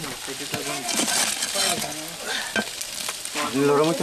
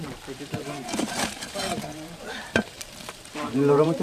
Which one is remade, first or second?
second